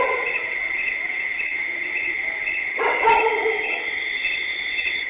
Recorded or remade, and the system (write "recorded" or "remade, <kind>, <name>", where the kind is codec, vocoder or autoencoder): remade, vocoder, WaveNeXt